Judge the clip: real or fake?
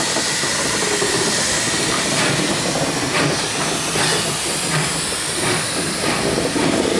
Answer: fake